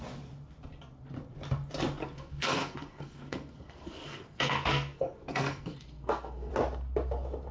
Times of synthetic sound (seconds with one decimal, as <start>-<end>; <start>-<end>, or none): 2.0-6.5